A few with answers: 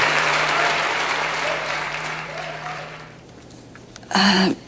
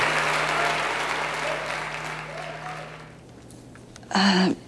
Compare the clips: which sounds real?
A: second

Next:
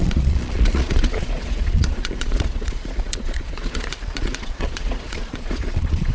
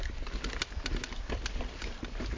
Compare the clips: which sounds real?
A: second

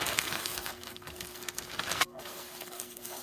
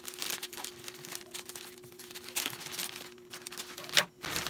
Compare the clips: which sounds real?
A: second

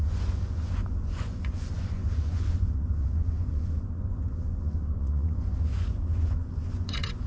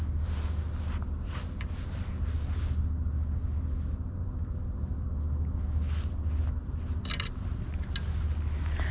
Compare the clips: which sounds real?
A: second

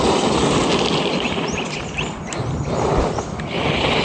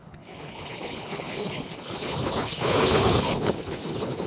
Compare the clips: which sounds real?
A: first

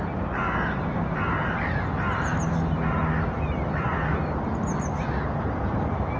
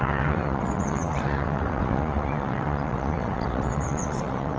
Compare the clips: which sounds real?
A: first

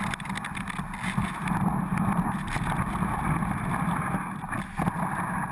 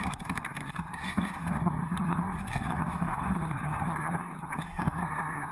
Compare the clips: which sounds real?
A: first